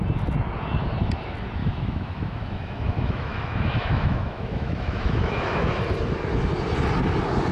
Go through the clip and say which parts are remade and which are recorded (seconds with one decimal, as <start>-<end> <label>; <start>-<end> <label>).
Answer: 0.0-1.6 recorded; 1.6-5.8 remade; 5.8-7.5 recorded